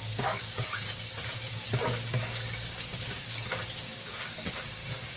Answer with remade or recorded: remade